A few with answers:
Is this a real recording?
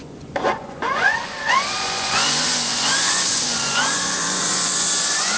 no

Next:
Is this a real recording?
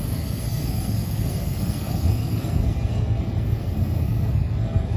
no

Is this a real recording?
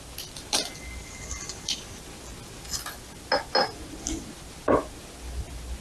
yes